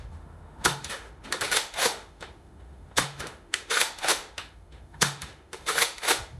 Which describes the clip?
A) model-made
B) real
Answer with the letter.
A